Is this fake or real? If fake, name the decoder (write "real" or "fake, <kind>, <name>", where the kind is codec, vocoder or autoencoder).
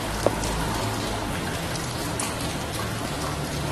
real